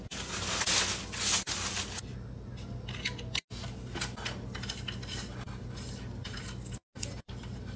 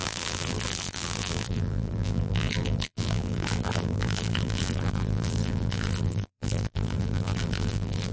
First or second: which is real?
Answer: first